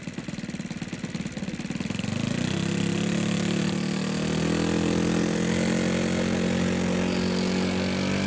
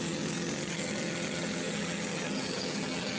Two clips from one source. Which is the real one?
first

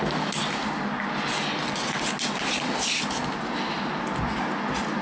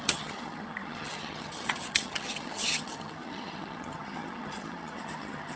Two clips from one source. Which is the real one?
first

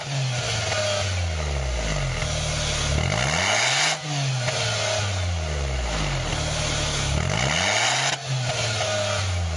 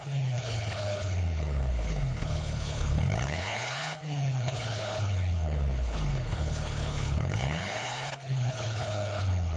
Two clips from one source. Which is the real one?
first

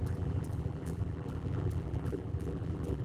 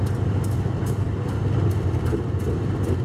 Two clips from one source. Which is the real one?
second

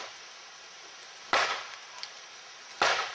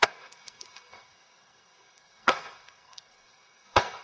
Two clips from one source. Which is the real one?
first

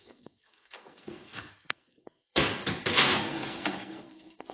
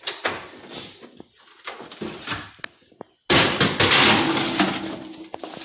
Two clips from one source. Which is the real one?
second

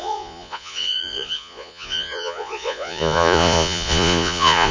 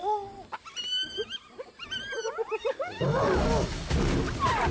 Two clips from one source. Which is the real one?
second